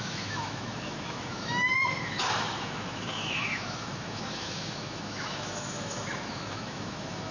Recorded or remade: remade